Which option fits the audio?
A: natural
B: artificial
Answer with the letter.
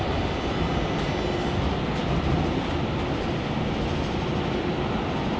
A